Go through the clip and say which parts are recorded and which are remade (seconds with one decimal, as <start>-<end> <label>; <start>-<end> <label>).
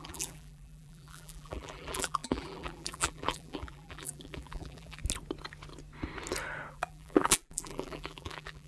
0.0-5.0 remade; 5.0-6.7 recorded; 6.7-8.7 remade